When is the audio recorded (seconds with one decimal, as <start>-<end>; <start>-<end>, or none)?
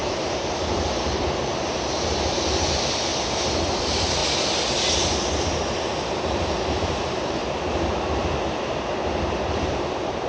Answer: 3.1-3.8; 4.2-6.1; 7.4-9.5